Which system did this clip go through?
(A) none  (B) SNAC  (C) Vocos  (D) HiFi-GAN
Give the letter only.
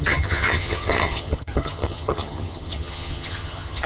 D